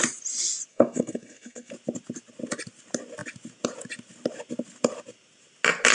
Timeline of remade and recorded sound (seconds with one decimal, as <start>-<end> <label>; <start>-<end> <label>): 0.0-0.7 recorded; 0.7-1.7 remade; 1.7-5.9 recorded